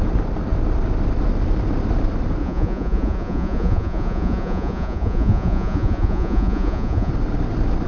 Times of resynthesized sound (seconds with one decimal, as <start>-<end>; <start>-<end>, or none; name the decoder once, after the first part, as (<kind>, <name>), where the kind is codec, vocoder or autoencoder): 2.4-7.1 (vocoder, Vocos)